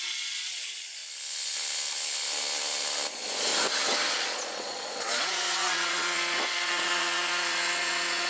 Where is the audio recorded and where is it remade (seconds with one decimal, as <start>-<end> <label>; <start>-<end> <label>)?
0.0-1.0 remade; 1.0-3.1 recorded; 3.1-3.5 remade; 3.5-4.1 recorded; 4.1-8.3 remade